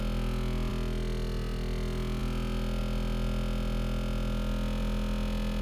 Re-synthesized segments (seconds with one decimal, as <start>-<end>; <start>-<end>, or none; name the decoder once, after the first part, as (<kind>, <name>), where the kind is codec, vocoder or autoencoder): none